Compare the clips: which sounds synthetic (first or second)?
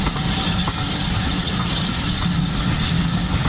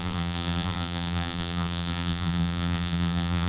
second